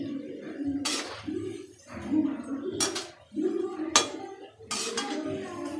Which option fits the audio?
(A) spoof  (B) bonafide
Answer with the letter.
B